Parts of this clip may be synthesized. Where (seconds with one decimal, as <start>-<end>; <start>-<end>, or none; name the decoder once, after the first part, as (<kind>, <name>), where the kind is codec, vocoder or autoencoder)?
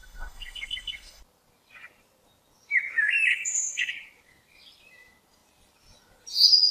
0.0-1.2 (codec, SNAC); 3.3-3.9